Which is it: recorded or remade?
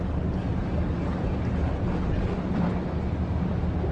recorded